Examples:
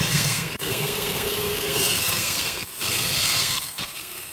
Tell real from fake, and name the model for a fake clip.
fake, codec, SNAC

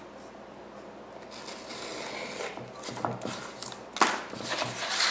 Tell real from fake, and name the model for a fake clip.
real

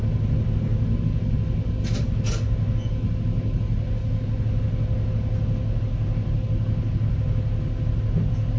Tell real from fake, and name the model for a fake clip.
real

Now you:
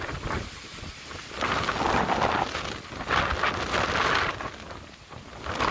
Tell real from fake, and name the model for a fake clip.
real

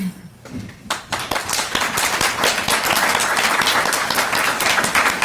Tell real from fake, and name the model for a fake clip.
real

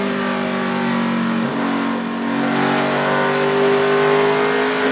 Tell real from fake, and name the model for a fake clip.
real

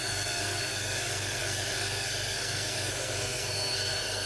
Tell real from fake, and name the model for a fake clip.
fake, codec, SNAC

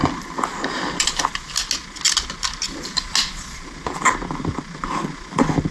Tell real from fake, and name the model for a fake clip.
real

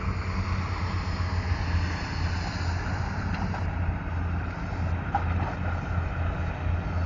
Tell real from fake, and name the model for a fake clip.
real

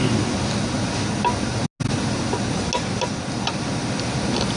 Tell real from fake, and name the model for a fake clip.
real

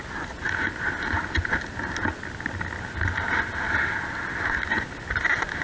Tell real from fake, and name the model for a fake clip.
real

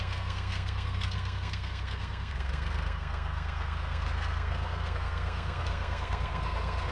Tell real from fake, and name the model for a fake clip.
fake, codec, SNAC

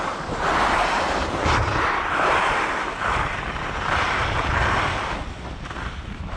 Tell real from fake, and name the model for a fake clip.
real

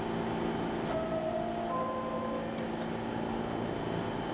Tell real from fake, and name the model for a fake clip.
real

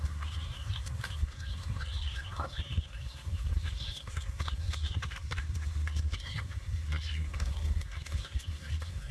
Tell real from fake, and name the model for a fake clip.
fake, codec, SNAC